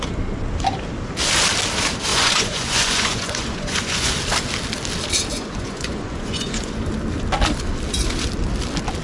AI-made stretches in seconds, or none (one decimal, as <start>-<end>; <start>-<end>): 2.1-4.1; 5.3-6.9